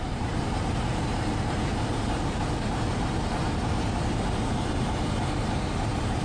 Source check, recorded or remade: remade